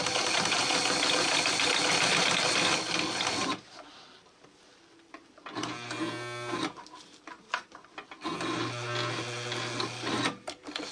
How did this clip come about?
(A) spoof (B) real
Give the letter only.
B